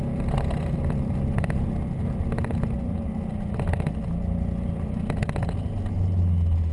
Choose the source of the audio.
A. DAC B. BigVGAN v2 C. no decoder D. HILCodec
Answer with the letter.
C